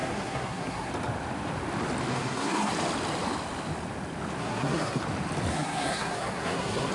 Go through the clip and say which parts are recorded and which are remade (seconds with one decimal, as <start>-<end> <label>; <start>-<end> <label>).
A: 0.0-0.9 remade; 0.9-2.1 recorded; 2.1-2.7 remade; 2.7-4.4 recorded; 4.4-5.0 remade; 5.0-5.5 recorded; 5.5-6.9 remade

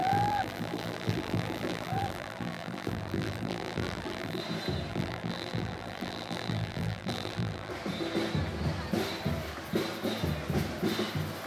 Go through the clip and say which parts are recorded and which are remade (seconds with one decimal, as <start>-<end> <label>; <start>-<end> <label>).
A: 0.0-4.4 remade; 4.4-4.9 recorded; 4.9-7.7 remade; 7.7-11.5 recorded

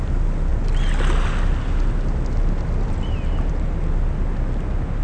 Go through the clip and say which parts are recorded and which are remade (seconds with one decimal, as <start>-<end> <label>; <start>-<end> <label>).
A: 0.0-5.0 recorded

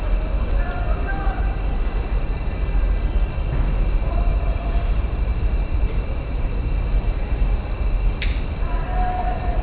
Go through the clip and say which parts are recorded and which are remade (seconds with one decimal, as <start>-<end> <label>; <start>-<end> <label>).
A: 0.0-1.1 recorded; 1.1-3.1 remade; 3.1-4.3 recorded; 4.3-6.5 remade; 6.5-9.6 recorded